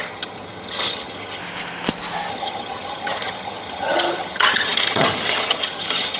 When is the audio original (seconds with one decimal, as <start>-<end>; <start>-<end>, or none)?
1.4-2.3